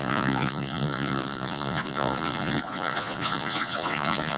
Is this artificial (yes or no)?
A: yes